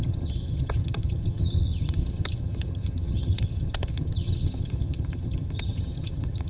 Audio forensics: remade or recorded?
remade